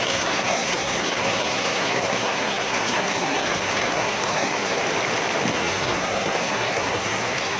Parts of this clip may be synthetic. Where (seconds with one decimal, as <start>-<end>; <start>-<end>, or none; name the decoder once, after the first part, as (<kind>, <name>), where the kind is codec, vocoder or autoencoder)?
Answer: 0.0-4.8 (codec, SNAC); 5.5-7.6